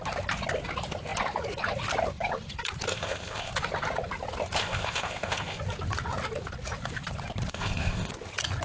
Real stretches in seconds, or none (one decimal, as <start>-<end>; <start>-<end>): 0.0-2.9; 3.5-4.6; 5.6-7.5; 8.1-8.6